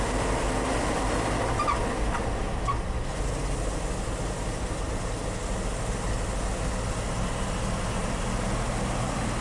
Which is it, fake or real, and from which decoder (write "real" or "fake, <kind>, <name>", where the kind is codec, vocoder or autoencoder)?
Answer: real